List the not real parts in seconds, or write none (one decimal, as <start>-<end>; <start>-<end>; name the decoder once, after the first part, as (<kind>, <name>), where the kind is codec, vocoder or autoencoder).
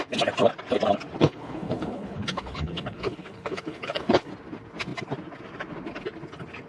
1.2-4.3 (codec, HILCodec)